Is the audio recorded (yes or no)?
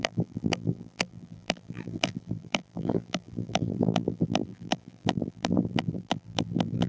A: no